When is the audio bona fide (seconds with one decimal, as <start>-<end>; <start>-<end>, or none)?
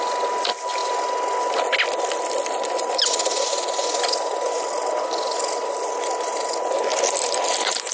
0.0-7.9